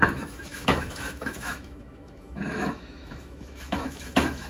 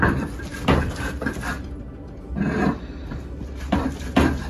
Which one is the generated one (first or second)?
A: first